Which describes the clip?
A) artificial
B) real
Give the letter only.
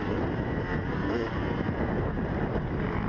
A